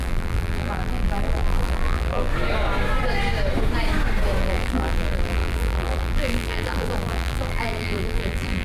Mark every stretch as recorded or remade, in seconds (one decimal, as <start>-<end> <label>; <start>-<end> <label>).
0.0-2.3 remade; 2.3-4.4 recorded; 4.4-8.6 remade